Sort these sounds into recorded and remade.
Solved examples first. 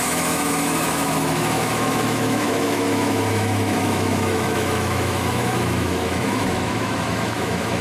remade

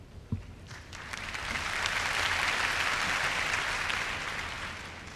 remade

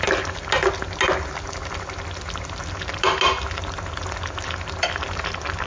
recorded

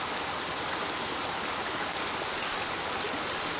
recorded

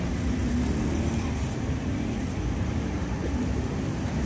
recorded